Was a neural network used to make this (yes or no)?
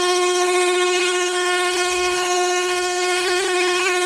yes